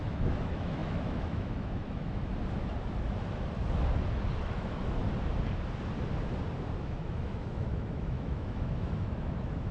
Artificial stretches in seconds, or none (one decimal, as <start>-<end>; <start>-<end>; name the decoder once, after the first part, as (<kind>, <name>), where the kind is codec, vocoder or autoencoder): 0.0-2.3 (autoencoder, DAC-VAE); 4.4-5.0; 6.8-9.7